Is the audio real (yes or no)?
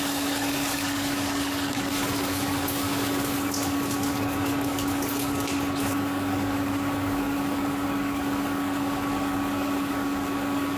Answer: no